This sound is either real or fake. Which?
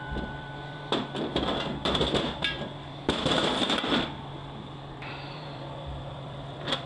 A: fake